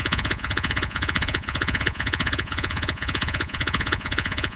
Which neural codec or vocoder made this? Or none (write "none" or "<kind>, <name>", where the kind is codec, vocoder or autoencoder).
vocoder, Vocos